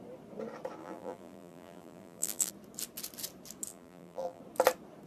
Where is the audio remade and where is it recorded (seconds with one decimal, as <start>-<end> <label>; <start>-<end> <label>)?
0.0-0.8 recorded; 0.8-2.5 remade; 2.5-3.7 recorded; 3.7-4.4 remade; 4.4-5.1 recorded